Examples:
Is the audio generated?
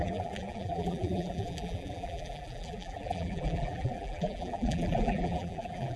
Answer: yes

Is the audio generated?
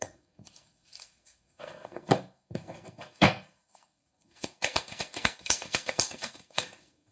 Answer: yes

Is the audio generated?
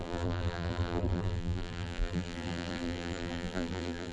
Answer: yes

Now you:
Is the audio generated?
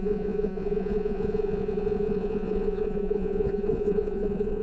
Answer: yes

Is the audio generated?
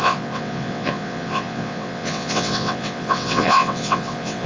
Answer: yes